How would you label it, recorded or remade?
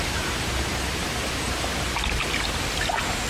recorded